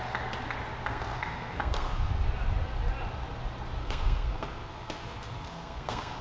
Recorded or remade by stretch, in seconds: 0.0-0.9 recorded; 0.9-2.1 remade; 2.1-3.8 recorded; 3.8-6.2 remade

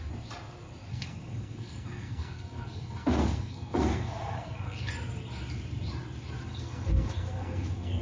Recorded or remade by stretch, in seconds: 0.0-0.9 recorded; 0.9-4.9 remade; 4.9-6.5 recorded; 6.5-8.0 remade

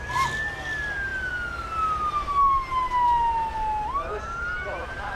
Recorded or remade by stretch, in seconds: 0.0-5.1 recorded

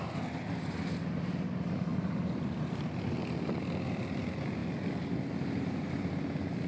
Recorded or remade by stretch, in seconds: 0.0-6.7 recorded

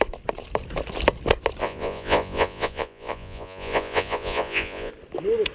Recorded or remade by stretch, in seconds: 0.0-1.6 recorded; 1.6-4.9 remade; 4.9-5.5 recorded

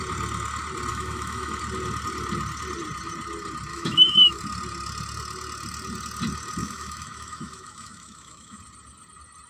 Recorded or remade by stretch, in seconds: 0.0-0.9 recorded; 0.9-1.6 remade; 1.6-3.7 recorded; 3.7-4.4 remade; 4.4-6.6 recorded; 6.6-8.6 remade; 8.6-9.5 recorded

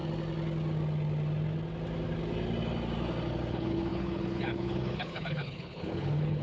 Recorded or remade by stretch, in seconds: 0.0-3.5 recorded; 3.5-6.4 remade

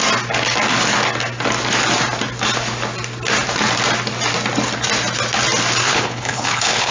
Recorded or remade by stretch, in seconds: 0.0-5.8 recorded; 5.8-6.9 remade